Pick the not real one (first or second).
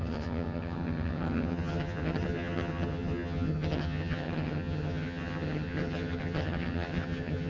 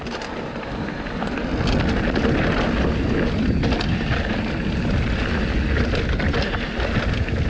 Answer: first